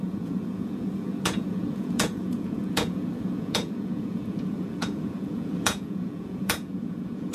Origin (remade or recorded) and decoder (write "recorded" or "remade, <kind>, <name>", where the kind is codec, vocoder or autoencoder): remade, vocoder, Vocos